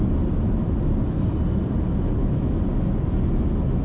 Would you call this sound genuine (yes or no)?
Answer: yes